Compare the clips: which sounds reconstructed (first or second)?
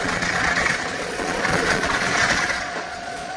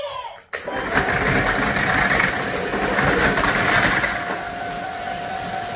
first